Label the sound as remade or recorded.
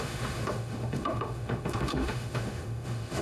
remade